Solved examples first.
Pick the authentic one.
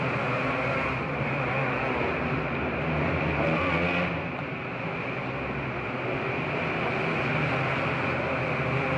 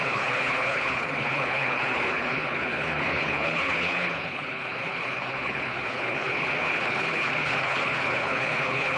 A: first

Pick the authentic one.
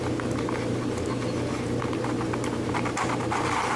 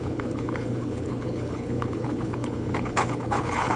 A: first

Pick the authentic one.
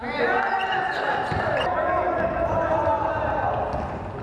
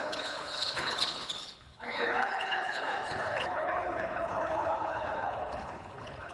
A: first